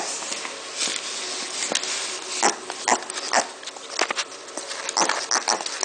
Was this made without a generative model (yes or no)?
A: yes